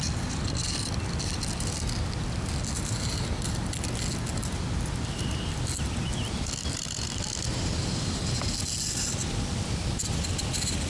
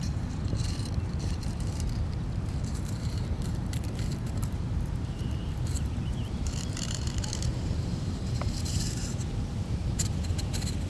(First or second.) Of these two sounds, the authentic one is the first